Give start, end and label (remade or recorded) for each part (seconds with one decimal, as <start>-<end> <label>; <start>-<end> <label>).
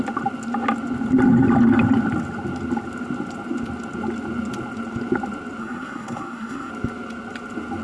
0.0-5.6 recorded; 5.6-6.7 remade; 6.7-7.8 recorded